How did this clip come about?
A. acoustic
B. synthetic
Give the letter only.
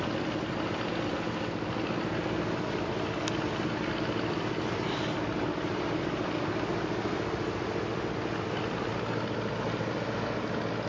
A